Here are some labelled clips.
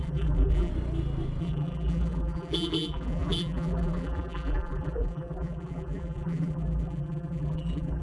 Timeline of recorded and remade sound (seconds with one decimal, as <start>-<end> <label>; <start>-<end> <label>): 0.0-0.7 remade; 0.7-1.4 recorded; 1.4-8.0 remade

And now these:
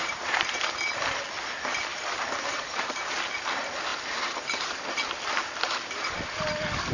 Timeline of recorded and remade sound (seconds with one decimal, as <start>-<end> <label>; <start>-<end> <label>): 0.0-0.7 remade; 0.7-1.9 recorded; 1.9-3.2 remade; 3.2-3.9 recorded; 3.9-4.8 remade; 4.8-6.9 recorded

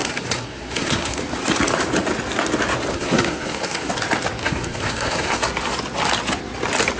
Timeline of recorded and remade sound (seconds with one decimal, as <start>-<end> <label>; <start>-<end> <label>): 0.0-1.2 remade; 1.2-2.9 recorded; 2.9-3.9 remade; 3.9-4.4 recorded; 4.4-5.4 remade; 5.4-7.0 recorded

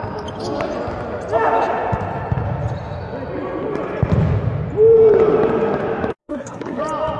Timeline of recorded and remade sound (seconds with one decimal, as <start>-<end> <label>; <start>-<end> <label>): 0.0-6.2 recorded; 6.2-6.8 remade; 6.8-7.2 recorded